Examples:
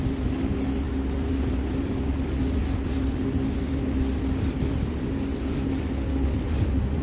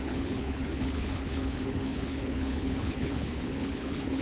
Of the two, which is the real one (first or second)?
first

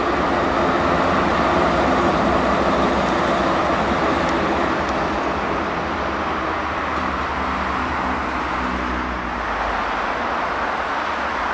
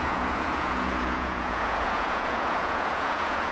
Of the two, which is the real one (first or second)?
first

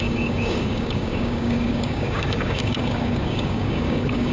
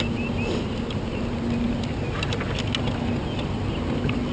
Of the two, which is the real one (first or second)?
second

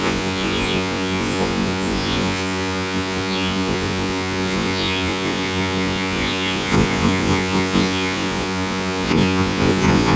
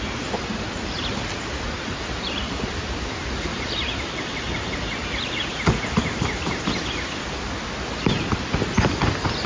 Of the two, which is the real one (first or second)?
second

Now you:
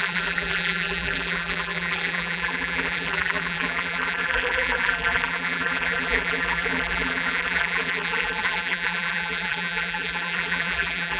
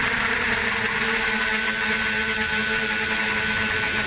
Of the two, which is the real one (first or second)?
second